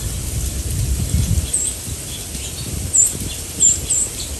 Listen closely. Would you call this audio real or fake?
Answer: fake